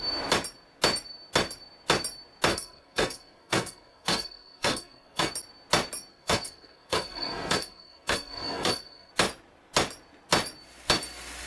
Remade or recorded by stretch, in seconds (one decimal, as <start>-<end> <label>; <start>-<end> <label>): 0.0-2.5 recorded; 2.5-5.3 remade; 5.3-6.1 recorded; 6.1-9.1 remade; 9.1-11.5 recorded

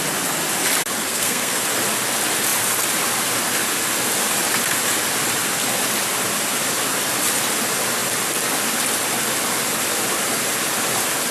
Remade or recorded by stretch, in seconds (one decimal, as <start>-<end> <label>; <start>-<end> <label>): 0.0-1.1 recorded; 1.1-1.6 remade; 1.6-11.3 recorded

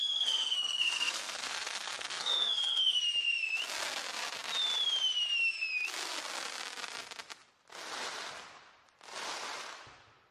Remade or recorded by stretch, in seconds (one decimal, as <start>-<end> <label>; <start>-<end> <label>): 0.0-3.0 remade; 3.0-10.3 recorded

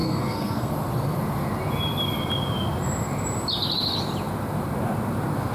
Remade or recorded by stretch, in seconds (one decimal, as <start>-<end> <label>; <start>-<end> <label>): 0.0-0.7 remade; 0.7-5.5 recorded